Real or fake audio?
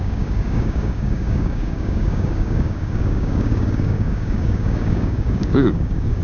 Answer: fake